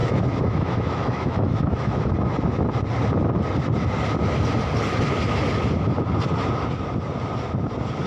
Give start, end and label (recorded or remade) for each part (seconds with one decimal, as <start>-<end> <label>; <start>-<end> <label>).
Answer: 0.0-2.1 remade; 2.1-8.1 recorded